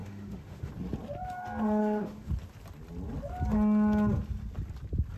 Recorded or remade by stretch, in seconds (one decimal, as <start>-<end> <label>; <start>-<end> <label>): 0.0-0.7 remade; 0.7-1.8 recorded; 1.8-2.3 remade; 2.3-5.2 recorded